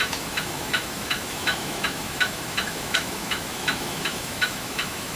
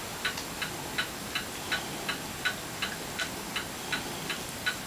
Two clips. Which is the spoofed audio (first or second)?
first